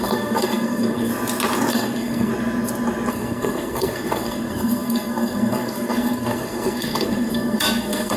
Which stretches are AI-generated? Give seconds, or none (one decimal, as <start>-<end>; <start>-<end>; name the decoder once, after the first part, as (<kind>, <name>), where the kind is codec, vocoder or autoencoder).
0.0-1.1 (codec, SNAC); 1.7-2.3; 3.1-8.2